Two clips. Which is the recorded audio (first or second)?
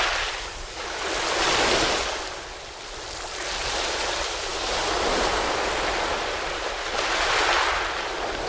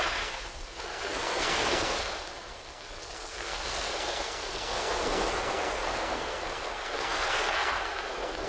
first